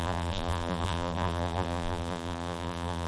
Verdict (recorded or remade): remade